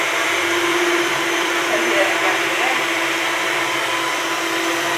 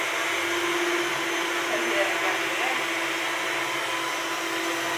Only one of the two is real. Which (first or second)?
second